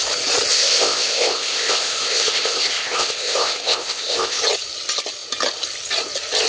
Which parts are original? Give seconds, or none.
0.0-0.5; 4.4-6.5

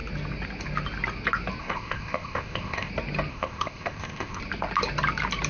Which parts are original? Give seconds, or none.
0.0-1.6; 2.9-3.3; 4.4-5.5

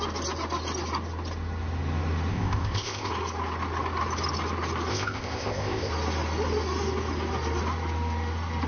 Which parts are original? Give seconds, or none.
0.0-2.3; 3.1-4.9; 5.9-8.7

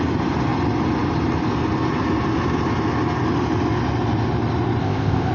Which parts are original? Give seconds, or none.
0.0-4.8

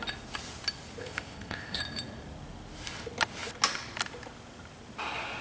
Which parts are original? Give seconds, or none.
0.0-1.0; 1.8-5.4

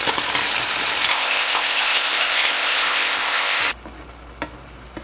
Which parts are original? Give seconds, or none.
0.0-1.1; 3.6-5.0

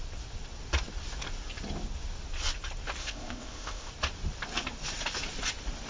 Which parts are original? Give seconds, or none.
0.0-3.0; 3.9-5.9

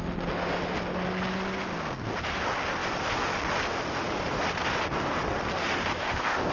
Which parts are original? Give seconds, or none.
0.0-6.0